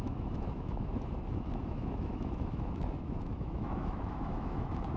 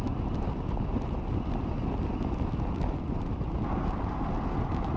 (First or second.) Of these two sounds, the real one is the second